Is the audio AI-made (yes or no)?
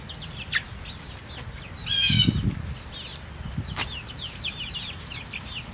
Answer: no